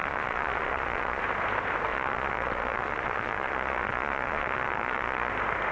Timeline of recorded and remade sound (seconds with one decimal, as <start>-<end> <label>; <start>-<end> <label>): 0.0-1.2 remade; 1.2-1.9 recorded; 1.9-5.3 remade; 5.3-5.7 recorded